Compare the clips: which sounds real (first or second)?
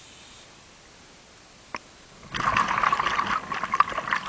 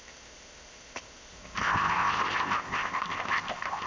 first